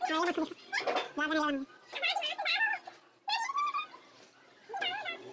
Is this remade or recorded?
recorded